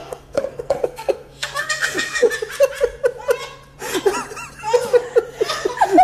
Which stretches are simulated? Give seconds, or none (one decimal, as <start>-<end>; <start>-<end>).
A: 0.0-2.3